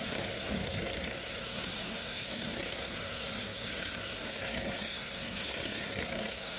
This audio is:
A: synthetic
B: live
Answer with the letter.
A